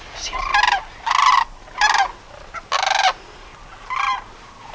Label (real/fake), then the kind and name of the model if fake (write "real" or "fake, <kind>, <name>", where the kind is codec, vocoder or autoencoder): real